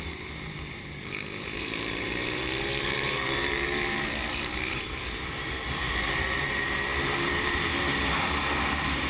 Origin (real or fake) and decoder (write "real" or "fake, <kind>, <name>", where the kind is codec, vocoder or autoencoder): fake, vocoder, BigVGAN v2